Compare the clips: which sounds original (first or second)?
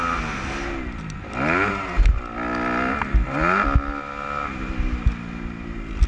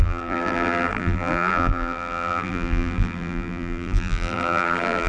first